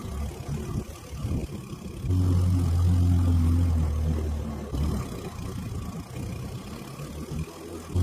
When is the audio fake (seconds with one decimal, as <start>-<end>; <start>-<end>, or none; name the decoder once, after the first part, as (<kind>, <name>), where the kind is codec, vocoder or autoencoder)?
none

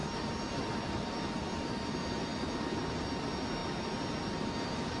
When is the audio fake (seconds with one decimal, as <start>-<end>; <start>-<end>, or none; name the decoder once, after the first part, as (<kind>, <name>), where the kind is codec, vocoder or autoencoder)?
none

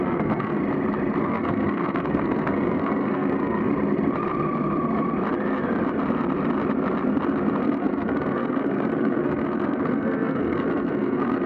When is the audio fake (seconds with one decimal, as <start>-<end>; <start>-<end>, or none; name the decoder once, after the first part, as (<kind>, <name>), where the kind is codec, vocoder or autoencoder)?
0.0-0.6 (codec, SNAC); 1.2-3.7; 7.6-11.5

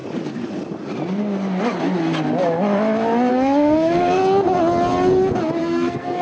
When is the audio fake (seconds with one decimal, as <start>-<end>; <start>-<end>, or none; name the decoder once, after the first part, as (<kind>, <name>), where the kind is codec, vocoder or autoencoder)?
3.3-4.2 (codec, SNAC); 5.6-6.2